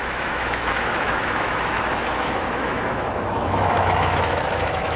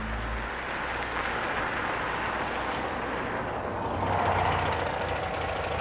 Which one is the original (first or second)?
second